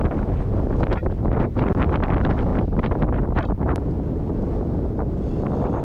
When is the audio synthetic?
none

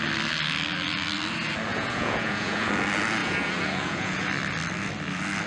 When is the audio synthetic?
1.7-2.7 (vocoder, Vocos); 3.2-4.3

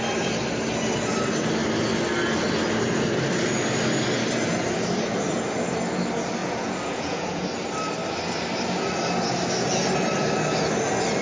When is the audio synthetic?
6.4-7.4 (vocoder, Vocos)

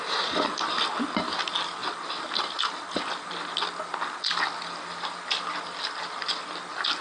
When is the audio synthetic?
none

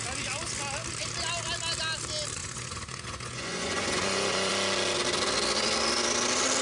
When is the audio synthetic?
2.4-4.5 (vocoder, Vocos)